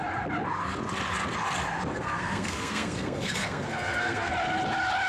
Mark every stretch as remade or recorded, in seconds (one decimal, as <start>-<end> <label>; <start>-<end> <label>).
0.0-1.9 recorded; 1.9-4.3 remade; 4.3-5.1 recorded